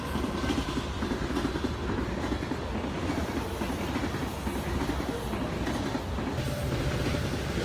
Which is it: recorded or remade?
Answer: recorded